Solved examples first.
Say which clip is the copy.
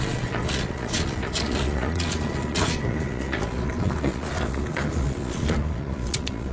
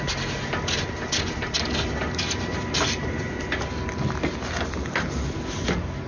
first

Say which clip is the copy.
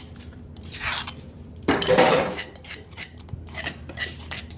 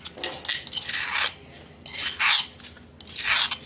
first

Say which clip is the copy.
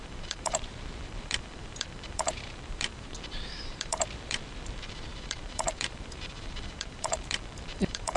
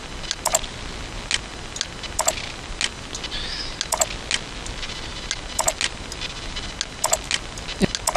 first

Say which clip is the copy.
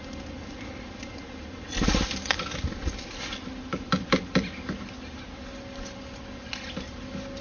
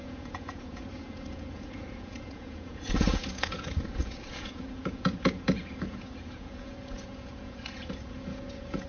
second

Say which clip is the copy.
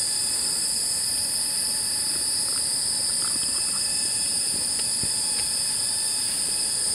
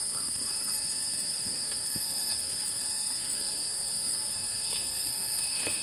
second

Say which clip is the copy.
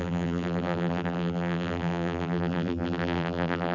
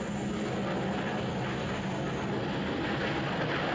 first